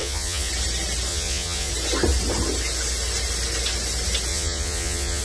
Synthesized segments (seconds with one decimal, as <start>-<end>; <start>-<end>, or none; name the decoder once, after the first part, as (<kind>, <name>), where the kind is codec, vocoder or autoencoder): 0.0-0.5 (vocoder, Vocos); 1.1-1.7; 4.3-5.2